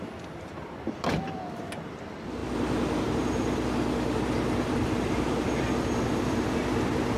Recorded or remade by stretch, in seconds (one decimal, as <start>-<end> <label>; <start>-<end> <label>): 0.0-2.4 remade; 2.4-3.0 recorded; 3.0-7.2 remade